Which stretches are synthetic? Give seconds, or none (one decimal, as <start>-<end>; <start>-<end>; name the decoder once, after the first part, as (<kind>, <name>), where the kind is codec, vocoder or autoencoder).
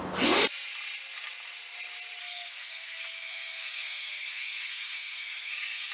2.2-5.9 (codec, SNAC)